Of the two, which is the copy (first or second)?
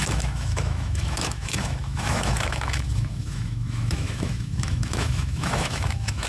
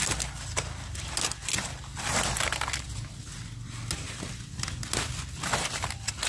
first